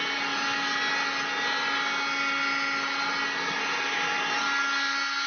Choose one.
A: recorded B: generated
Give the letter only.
A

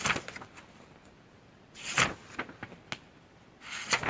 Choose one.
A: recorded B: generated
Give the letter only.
A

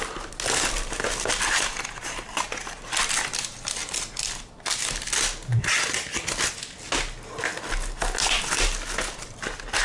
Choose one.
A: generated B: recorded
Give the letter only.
B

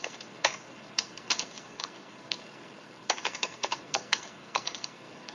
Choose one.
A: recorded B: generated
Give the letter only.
B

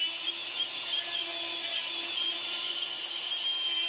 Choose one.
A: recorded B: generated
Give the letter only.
A